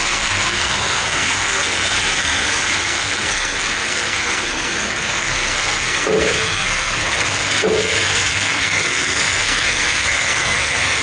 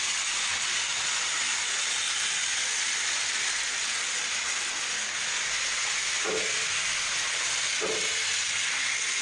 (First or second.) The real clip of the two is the second